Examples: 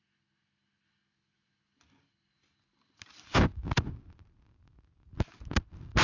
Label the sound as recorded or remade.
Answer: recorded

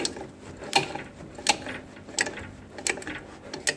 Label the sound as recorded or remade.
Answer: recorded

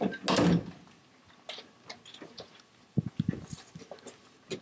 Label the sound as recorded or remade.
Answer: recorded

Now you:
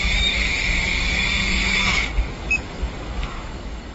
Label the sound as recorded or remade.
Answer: remade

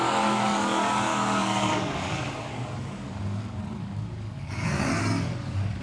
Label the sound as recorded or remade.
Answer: remade